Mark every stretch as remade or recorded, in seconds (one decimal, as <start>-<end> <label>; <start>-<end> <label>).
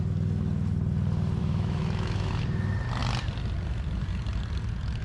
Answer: 0.0-1.4 recorded; 1.4-2.3 remade; 2.3-5.0 recorded